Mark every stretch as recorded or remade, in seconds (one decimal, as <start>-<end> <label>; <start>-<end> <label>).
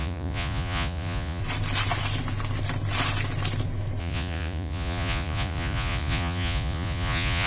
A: 0.0-1.4 remade; 1.4-4.0 recorded; 4.0-7.5 remade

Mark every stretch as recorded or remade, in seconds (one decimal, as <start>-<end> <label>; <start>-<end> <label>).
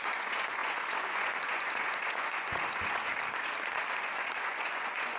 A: 0.0-3.1 remade; 3.1-4.0 recorded; 4.0-5.2 remade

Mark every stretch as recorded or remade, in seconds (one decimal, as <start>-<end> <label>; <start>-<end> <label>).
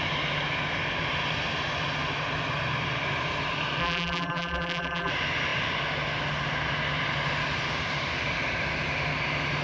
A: 0.0-3.8 recorded; 3.8-5.1 remade; 5.1-9.6 recorded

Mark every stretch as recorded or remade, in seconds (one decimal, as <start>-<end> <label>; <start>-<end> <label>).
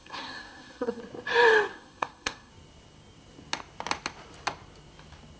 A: 0.0-1.0 remade; 1.0-1.7 recorded; 1.7-2.5 remade; 2.5-5.4 recorded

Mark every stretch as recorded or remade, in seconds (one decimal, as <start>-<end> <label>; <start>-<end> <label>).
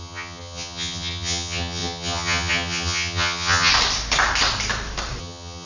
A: 0.0-3.7 remade; 3.7-5.2 recorded; 5.2-5.7 remade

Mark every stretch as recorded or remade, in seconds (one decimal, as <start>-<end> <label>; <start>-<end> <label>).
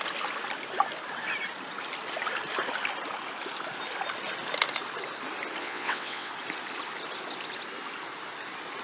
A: 0.0-5.6 recorded; 5.6-6.3 remade; 6.3-8.8 recorded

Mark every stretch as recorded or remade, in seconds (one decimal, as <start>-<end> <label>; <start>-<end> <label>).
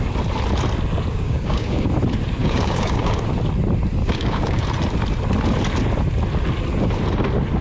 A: 0.0-1.1 recorded; 1.1-1.9 remade; 1.9-2.4 recorded; 2.4-3.2 remade; 3.2-4.0 recorded; 4.0-4.6 remade; 4.6-7.6 recorded